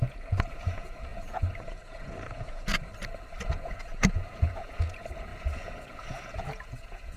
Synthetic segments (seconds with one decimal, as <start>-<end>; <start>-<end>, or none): 0.0-2.9; 3.4-7.2